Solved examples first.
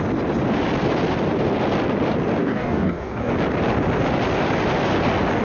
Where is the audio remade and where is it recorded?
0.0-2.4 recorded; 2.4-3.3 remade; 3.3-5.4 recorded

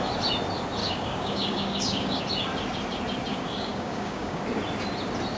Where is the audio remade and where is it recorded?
0.0-0.8 recorded; 0.8-2.2 remade; 2.2-3.3 recorded; 3.3-4.4 remade; 4.4-5.4 recorded

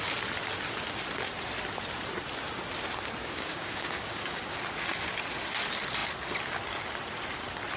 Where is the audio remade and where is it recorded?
0.0-3.2 recorded; 3.2-4.6 remade; 4.6-7.8 recorded

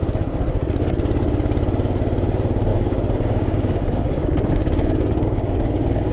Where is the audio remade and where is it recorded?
0.0-2.7 recorded; 2.7-6.1 remade